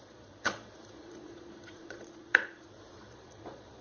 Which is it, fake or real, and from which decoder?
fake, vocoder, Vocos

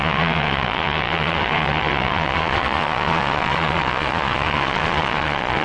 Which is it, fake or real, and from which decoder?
fake, vocoder, Vocos